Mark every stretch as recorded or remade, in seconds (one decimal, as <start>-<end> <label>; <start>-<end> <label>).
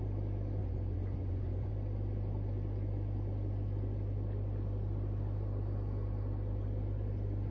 0.0-0.6 recorded; 0.6-1.7 remade; 1.7-7.5 recorded